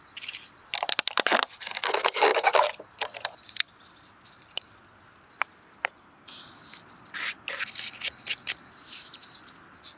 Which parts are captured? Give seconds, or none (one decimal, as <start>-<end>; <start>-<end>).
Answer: 0.0-10.0